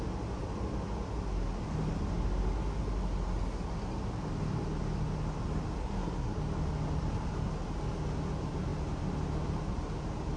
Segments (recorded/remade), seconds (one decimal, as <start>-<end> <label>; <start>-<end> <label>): 0.0-5.8 recorded; 5.8-6.4 remade; 6.4-10.4 recorded